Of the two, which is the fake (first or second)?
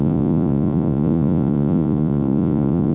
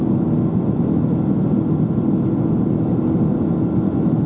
first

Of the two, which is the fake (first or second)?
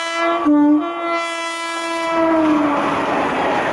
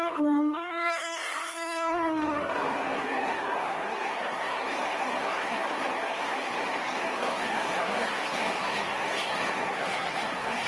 second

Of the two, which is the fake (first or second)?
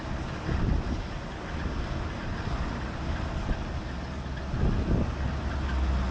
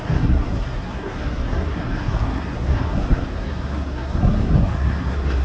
second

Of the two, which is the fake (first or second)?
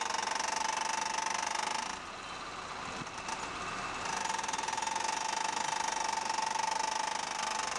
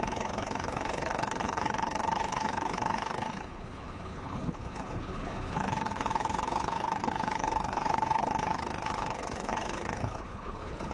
second